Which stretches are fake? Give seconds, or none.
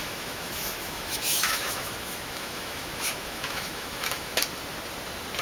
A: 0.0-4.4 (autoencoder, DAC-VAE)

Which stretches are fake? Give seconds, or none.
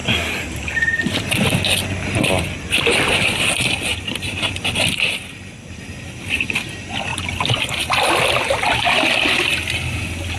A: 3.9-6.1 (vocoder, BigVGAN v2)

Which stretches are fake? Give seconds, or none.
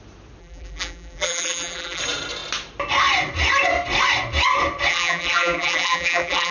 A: 0.4-2.0 (vocoder, BigVGAN v2); 4.9-6.5